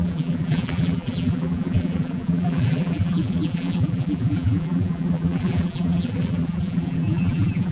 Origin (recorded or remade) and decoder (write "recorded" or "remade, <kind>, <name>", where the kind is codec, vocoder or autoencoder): remade, vocoder, BigVGAN v2